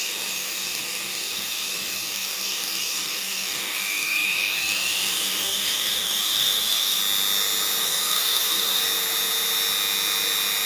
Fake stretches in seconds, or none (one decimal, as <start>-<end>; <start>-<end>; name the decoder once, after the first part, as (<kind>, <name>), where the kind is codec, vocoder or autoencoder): 0.0-7.0 (codec, DAC); 7.8-8.8